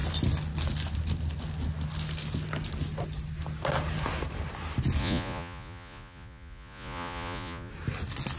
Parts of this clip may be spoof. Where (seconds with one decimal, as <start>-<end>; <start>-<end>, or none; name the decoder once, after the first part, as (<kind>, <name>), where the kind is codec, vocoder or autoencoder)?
5.0-7.7 (vocoder, Vocos)